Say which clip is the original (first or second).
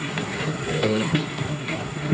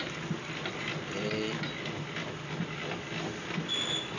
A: second